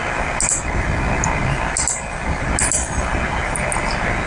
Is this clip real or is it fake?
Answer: real